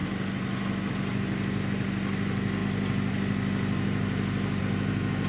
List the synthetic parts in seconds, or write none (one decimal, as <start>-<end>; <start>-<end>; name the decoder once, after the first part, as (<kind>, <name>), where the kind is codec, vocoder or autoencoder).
none